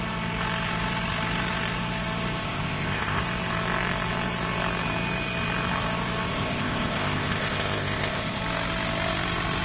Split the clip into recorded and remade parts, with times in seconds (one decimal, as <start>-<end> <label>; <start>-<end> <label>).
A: 0.0-2.4 recorded; 2.4-3.2 remade; 3.2-6.3 recorded; 6.3-8.4 remade; 8.4-9.6 recorded